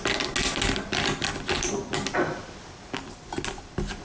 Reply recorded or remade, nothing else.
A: recorded